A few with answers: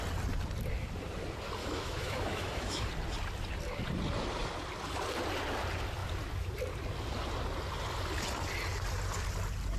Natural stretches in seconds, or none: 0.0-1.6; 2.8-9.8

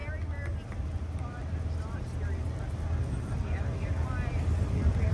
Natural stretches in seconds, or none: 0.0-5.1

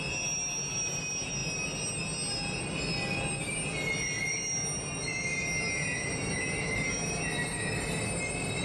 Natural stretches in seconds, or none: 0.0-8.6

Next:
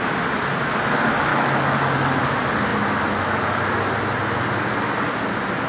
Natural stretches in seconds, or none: 0.0-1.3; 2.2-5.7

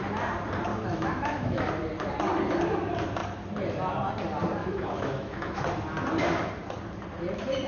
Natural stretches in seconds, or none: 0.0-0.7; 1.7-4.6; 5.6-7.7